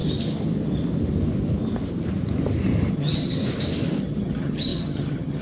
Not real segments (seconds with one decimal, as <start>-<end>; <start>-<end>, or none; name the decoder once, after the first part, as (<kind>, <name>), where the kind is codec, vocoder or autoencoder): 2.9-3.4 (vocoder, HiFi-GAN); 4.0-5.4